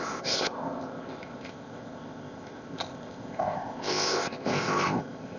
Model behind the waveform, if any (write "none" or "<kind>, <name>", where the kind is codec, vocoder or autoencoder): codec, ZipCodec